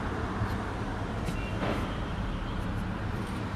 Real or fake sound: real